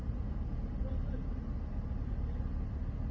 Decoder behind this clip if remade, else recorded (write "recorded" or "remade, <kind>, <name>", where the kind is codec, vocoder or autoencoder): recorded